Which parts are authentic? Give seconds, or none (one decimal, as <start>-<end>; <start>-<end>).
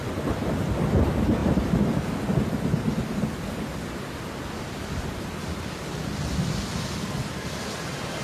0.0-8.2